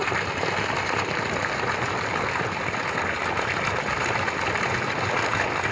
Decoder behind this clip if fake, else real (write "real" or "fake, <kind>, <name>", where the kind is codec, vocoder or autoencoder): real